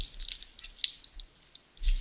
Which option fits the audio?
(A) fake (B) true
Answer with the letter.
B